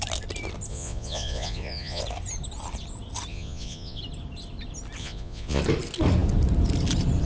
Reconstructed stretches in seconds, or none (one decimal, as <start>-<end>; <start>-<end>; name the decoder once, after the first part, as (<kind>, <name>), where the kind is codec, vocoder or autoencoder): 0.7-2.0 (vocoder, Vocos); 3.3-4.0; 5.0-5.6